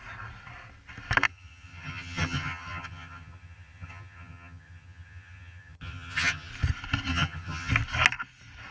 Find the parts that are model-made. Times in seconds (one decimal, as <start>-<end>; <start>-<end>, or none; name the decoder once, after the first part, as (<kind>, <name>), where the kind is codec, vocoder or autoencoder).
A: 1.3-6.5 (vocoder, HiFi-GAN); 7.1-7.7